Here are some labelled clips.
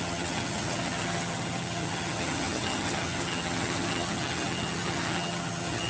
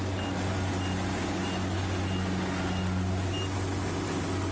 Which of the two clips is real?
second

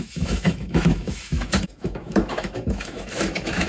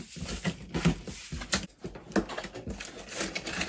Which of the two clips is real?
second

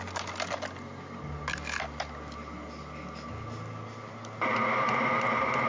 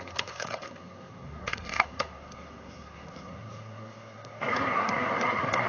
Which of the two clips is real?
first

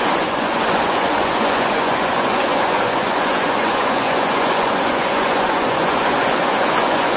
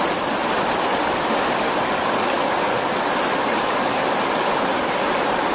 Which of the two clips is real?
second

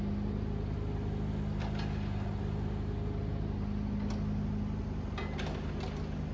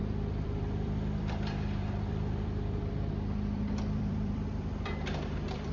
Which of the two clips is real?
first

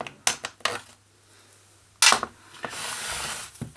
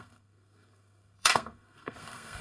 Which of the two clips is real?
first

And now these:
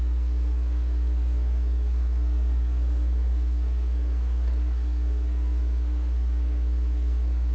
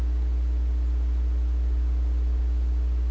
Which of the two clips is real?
second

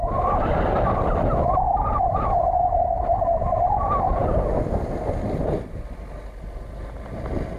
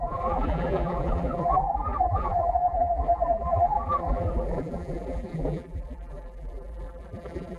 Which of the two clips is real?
first